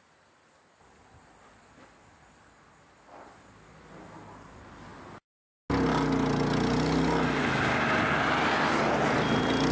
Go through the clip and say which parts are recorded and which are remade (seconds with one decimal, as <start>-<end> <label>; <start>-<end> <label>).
0.0-9.7 recorded